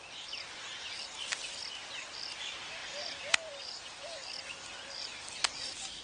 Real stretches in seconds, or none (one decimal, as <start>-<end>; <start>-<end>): 0.0-6.0